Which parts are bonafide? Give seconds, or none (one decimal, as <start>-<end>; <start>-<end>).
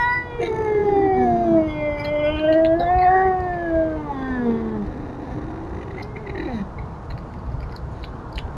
0.0-8.6